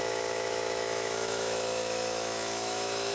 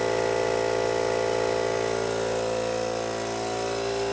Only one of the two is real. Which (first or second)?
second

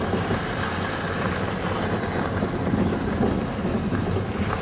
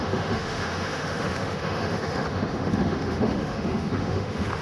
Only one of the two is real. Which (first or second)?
first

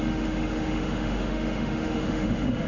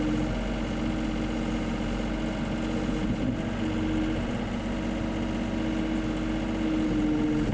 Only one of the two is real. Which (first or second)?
second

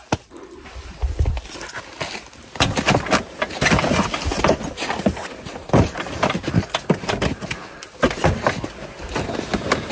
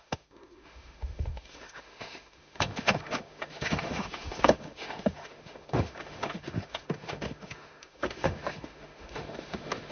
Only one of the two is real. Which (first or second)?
first